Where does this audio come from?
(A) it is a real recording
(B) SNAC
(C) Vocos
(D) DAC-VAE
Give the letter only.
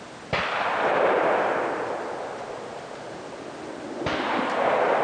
A